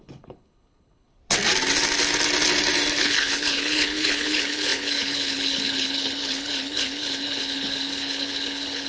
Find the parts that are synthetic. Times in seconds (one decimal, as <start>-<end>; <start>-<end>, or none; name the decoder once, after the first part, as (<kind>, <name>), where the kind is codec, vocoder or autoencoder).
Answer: 0.0-1.2 (codec, HILCodec); 3.0-8.9

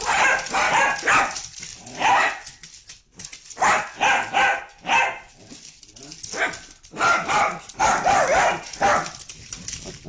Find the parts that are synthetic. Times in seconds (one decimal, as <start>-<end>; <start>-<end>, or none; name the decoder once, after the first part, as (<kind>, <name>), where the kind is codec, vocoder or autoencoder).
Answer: none

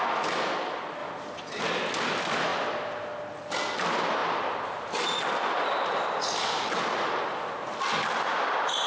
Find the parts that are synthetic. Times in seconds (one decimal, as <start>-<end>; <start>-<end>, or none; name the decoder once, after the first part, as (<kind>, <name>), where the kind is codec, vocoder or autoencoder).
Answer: none

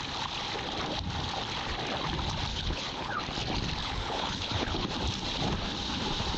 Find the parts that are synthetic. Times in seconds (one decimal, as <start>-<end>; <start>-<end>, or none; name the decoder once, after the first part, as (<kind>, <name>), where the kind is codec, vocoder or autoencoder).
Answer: 2.5-3.2 (codec, HILCodec); 3.8-4.9

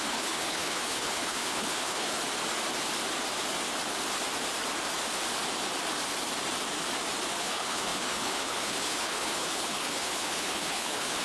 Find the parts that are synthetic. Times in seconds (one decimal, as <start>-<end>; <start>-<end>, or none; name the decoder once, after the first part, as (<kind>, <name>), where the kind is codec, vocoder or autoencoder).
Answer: 0.0-2.2 (codec, HILCodec); 7.4-11.2

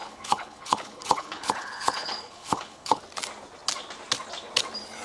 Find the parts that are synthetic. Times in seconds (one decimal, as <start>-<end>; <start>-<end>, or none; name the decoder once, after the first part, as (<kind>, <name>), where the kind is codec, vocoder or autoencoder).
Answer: 0.0-3.0 (codec, HILCodec)

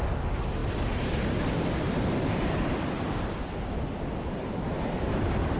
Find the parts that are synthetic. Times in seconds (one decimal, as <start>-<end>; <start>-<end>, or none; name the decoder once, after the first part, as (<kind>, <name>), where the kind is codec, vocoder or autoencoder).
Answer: none

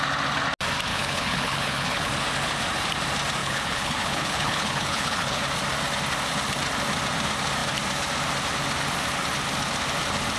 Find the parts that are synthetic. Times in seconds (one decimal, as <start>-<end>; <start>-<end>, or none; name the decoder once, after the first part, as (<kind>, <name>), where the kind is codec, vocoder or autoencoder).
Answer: 0.9-2.1 (codec, HILCodec); 3.4-5.4